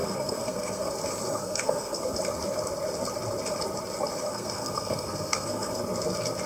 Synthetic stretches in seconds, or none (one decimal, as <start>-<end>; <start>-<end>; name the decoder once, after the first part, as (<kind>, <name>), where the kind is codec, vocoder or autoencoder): 0.0-0.9 (codec, SNAC); 1.4-2.2; 4.3-5.8